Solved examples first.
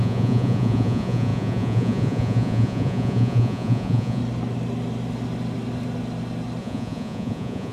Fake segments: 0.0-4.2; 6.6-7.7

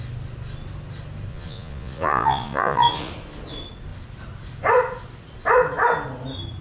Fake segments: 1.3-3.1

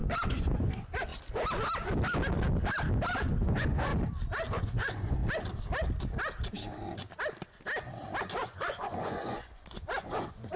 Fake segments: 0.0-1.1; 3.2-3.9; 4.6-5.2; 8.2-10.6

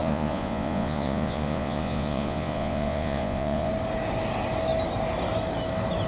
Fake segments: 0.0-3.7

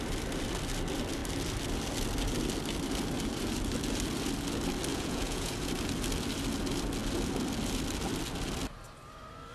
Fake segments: 4.9-5.7

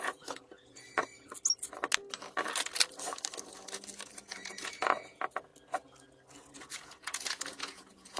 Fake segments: 0.0-1.1; 4.1-5.5; 6.6-8.2